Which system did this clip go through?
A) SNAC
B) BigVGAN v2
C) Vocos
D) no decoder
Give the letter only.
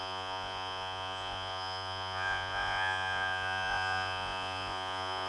C